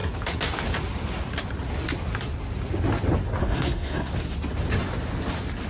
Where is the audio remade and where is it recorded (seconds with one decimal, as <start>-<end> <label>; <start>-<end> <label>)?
0.0-3.4 recorded; 3.4-4.1 remade; 4.1-5.7 recorded